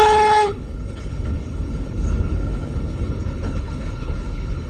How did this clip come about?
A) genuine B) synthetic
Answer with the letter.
B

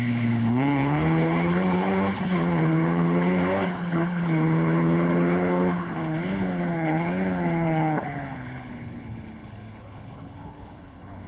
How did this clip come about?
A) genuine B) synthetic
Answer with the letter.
B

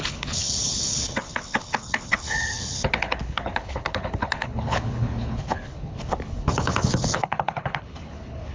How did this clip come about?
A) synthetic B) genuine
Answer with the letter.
A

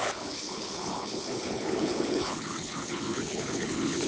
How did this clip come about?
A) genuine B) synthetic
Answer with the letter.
B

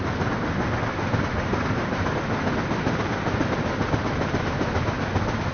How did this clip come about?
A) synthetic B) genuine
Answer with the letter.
B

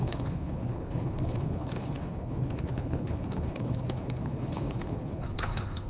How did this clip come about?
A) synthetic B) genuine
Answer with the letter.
A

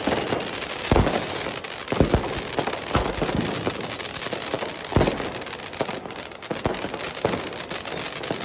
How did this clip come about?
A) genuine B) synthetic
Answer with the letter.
A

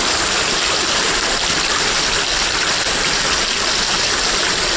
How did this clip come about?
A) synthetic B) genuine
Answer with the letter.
B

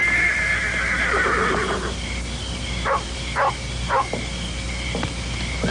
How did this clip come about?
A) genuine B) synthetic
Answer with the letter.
A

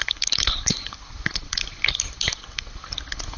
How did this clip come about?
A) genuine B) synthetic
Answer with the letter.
B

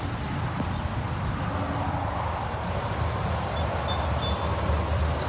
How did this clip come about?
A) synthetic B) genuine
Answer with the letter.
B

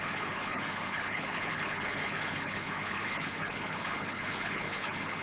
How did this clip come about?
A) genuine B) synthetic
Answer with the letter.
B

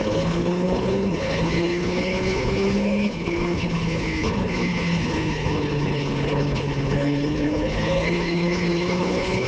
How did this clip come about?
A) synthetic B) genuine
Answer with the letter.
A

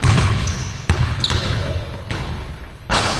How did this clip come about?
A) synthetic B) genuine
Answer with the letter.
A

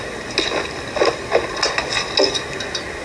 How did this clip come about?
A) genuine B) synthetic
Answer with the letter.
A